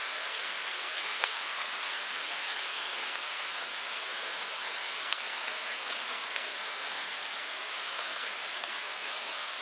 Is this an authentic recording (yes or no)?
no